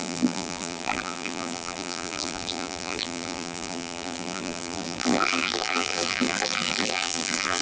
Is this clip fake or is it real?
fake